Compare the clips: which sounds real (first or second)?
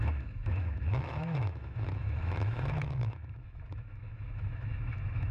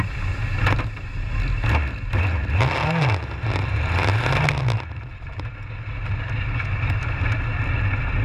second